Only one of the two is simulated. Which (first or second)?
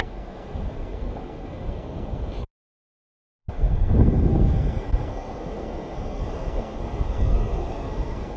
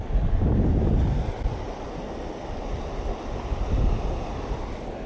first